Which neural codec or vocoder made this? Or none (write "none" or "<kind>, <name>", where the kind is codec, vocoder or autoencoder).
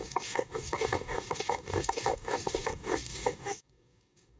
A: codec, DAC